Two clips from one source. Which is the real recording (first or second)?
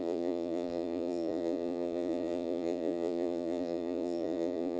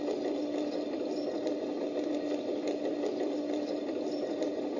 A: second